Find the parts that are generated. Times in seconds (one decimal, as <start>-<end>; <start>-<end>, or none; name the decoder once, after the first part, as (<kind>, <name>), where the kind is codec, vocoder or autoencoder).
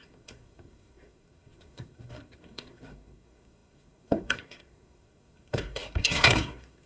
0.0-6.9 (codec, SNAC)